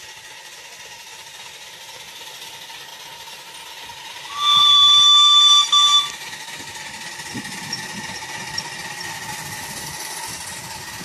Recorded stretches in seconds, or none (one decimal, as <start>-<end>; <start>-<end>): 0.0-11.0